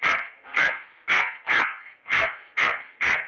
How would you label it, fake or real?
fake